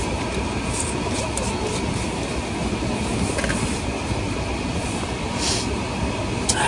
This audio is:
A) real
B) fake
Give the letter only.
A